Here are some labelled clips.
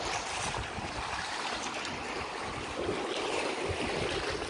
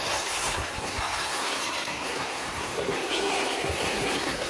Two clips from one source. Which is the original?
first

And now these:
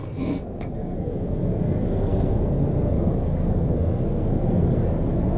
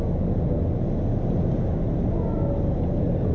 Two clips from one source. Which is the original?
second